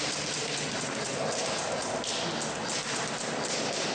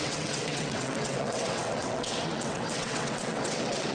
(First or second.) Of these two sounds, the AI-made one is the second